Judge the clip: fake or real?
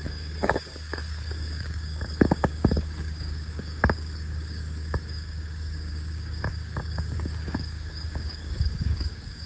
fake